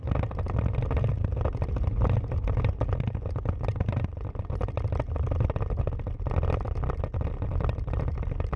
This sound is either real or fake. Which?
real